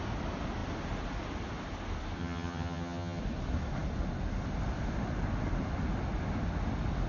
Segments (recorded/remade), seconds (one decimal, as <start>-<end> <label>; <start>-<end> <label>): 0.0-2.2 recorded; 2.2-3.2 remade; 3.2-7.1 recorded